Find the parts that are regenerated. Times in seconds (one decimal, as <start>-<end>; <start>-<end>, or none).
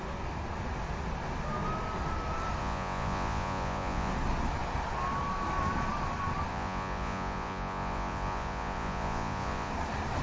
2.6-4.1; 6.5-9.7